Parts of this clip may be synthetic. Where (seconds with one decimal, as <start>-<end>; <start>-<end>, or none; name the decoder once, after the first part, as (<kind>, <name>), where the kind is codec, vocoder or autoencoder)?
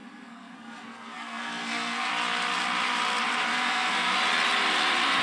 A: 0.0-2.1 (codec, SNAC); 3.5-4.1